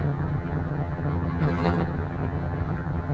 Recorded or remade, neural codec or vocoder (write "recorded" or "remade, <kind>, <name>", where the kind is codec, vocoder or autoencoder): remade, vocoder, HiFi-GAN